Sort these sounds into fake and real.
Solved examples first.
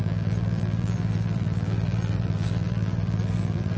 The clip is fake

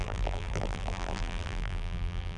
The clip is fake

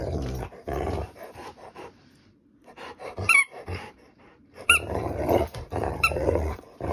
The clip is fake